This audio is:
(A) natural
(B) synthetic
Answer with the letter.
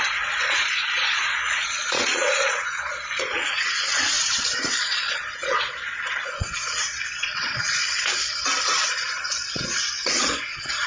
B